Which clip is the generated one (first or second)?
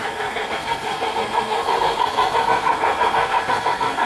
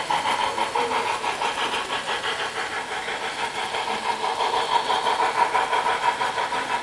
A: first